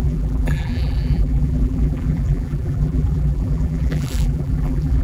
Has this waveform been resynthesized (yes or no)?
yes